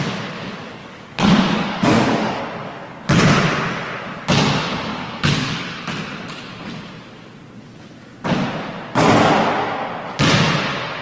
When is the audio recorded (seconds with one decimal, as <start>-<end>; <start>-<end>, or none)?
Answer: 0.0-0.8; 2.4-4.9; 5.8-11.0

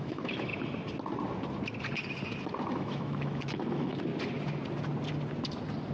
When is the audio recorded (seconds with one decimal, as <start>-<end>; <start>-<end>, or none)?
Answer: 0.5-2.7; 4.1-5.9

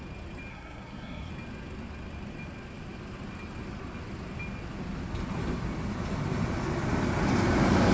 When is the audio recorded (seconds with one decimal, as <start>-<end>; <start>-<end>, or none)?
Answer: 0.0-0.5; 1.3-7.9

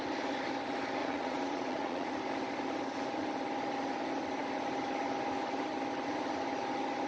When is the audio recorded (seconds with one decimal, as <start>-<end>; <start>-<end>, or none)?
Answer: 0.0-1.0; 2.1-7.1